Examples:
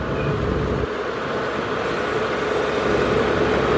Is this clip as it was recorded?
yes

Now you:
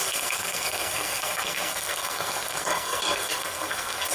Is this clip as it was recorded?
no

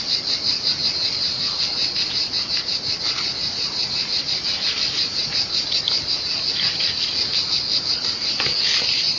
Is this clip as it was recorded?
yes